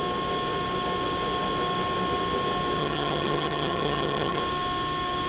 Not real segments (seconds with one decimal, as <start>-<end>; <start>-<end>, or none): 2.8-4.4